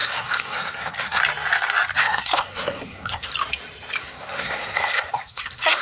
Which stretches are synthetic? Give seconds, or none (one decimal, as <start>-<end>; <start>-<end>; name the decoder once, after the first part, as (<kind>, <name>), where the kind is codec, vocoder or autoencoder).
0.0-1.2 (codec, SNAC); 2.0-3.3; 4.0-5.8